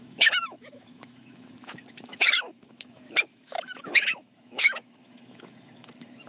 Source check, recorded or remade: remade